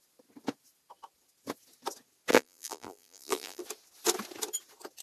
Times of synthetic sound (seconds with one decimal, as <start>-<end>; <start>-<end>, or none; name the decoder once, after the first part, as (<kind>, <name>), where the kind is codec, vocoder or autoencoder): 2.3-3.6 (vocoder, BigVGAN v2)